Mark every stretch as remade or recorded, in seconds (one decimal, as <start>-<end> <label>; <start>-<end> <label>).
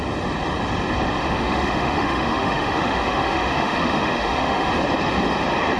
0.0-1.2 recorded; 1.2-4.7 remade; 4.7-5.8 recorded